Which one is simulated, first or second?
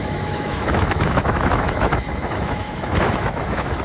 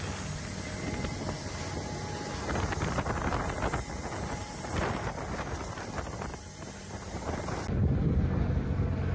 first